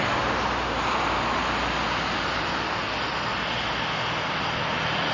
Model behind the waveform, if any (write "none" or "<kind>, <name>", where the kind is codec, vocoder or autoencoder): none